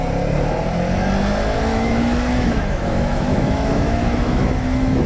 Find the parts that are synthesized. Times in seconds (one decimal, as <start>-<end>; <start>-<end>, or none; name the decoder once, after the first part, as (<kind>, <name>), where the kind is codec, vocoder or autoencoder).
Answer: 1.7-5.1 (autoencoder, DAC-VAE)